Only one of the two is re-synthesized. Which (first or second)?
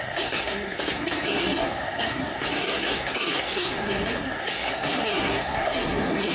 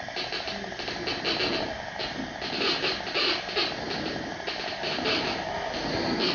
first